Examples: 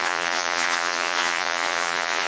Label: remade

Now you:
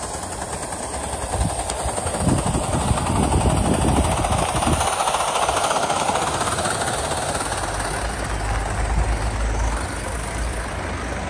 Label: recorded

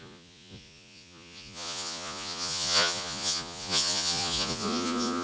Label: remade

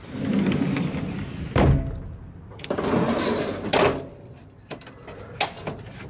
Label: recorded